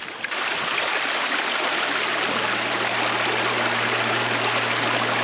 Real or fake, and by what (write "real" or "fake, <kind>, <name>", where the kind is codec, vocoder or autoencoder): real